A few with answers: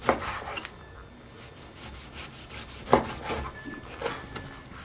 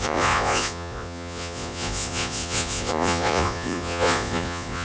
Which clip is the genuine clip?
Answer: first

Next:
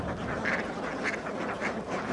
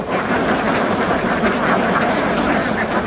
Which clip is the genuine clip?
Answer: second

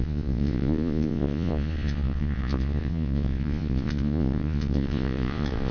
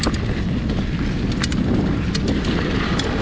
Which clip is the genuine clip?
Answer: second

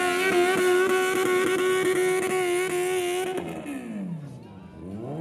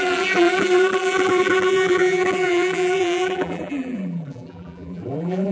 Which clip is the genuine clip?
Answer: first